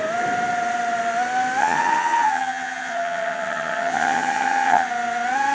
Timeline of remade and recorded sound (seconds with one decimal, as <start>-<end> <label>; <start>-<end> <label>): 0.0-1.6 recorded; 1.6-4.9 remade; 4.9-5.5 recorded